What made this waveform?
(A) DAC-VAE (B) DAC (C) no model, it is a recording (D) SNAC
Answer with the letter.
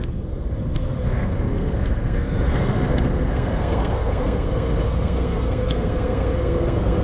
D